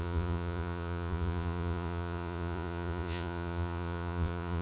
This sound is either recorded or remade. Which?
remade